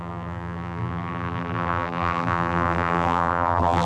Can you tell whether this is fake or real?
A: fake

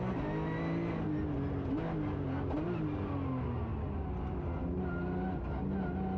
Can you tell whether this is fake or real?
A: real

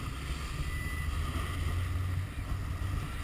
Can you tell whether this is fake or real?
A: real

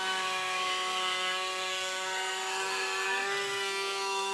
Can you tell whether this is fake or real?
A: fake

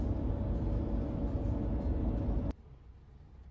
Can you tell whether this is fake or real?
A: real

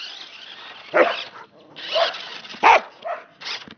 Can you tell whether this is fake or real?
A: real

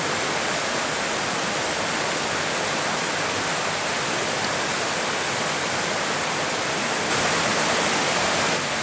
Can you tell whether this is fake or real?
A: real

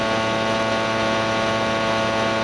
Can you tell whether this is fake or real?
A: real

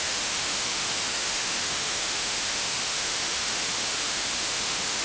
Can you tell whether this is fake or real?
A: fake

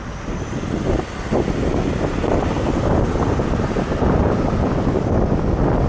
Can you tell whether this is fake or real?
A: real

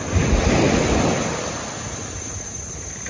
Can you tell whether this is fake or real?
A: real